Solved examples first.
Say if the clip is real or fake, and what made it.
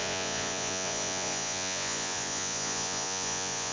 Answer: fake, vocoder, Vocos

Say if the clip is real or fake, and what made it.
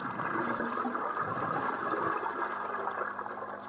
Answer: real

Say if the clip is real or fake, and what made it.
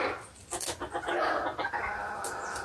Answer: real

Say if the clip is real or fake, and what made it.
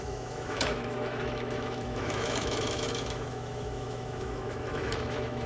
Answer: fake, autoencoder, DAC-VAE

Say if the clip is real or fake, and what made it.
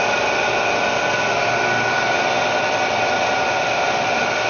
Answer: real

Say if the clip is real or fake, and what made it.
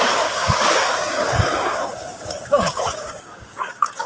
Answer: fake, codec, DAC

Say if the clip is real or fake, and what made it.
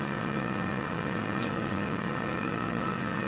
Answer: fake, vocoder, WaveNeXt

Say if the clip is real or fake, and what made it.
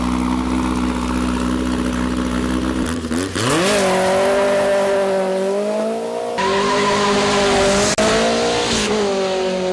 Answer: real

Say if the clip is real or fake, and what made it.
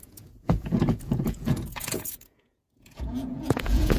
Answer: fake, vocoder, Vocos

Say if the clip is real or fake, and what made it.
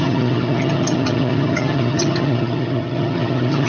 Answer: fake, vocoder, HiFi-GAN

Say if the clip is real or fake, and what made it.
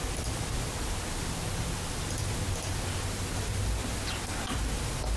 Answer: real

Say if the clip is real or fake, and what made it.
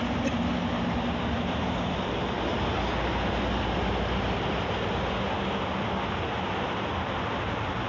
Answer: real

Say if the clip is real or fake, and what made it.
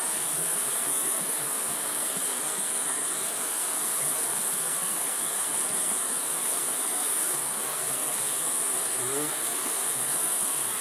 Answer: fake, codec, SNAC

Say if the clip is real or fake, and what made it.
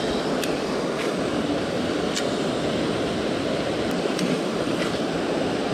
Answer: real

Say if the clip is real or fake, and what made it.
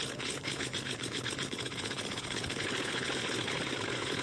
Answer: fake, codec, HILCodec